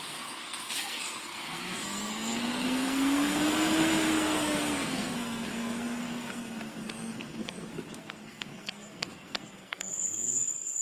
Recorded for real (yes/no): no